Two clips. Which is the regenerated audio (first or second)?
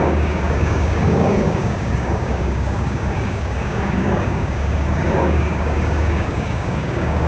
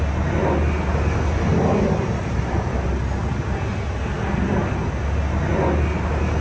first